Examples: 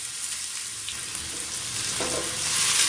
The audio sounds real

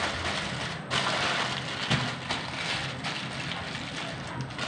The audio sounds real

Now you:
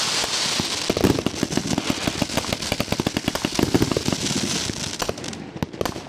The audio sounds real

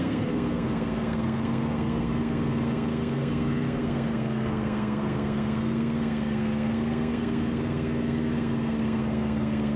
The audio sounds fake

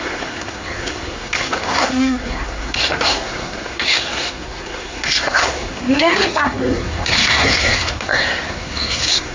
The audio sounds fake